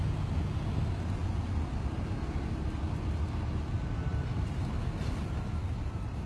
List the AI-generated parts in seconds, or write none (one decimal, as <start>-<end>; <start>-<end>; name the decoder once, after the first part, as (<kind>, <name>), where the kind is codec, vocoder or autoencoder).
4.1-6.3 (vocoder, BigVGAN v2)